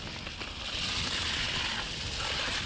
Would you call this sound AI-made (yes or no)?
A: no